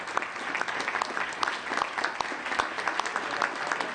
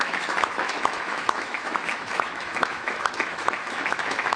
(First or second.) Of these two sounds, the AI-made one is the second